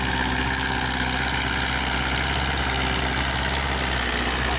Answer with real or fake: real